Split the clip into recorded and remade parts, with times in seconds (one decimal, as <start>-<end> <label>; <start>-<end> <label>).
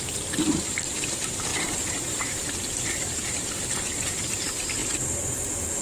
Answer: 0.0-4.8 remade; 4.8-5.8 recorded